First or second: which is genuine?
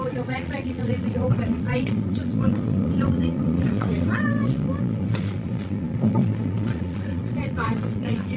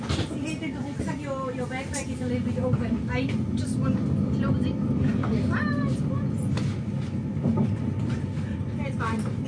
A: second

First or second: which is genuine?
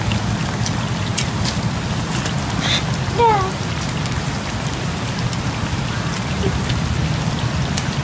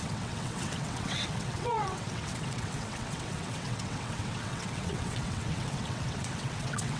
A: first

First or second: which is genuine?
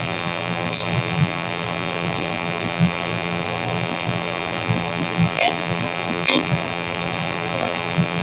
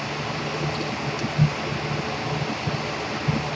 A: second